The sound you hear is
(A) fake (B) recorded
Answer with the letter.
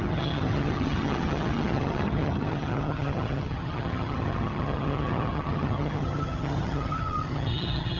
A